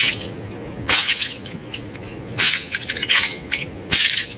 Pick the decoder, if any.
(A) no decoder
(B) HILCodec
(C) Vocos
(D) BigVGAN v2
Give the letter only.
C